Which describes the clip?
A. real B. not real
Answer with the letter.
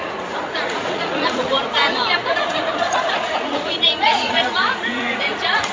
B